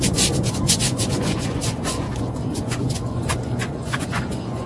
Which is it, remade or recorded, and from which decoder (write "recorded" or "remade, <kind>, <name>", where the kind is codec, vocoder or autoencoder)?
remade, vocoder, Vocos